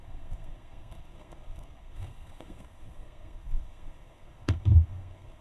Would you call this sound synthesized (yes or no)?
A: yes